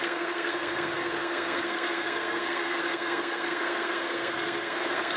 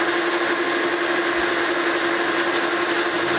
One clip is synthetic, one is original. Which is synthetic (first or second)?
first